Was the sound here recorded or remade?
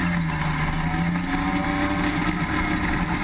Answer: recorded